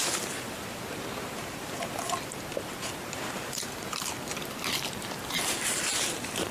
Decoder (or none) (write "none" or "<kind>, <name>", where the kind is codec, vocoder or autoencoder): vocoder, BigVGAN v2